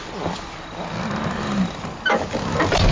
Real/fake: real